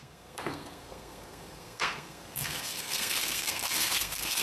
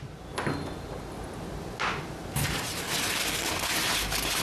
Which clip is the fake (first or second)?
first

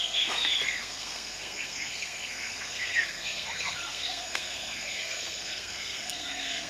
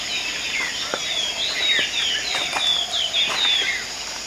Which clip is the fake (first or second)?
first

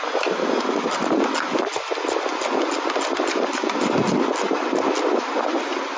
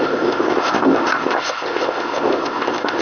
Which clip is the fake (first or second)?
second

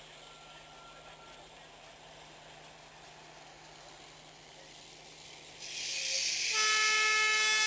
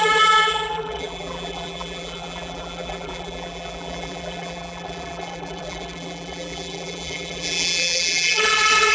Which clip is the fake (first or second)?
second